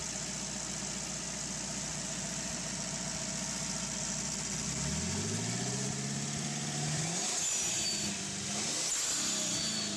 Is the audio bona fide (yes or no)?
yes